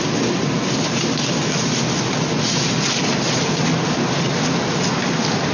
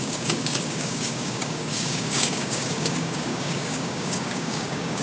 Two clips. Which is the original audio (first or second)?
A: first